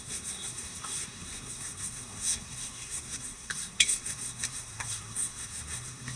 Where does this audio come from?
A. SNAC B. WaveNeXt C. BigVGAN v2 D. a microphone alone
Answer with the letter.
A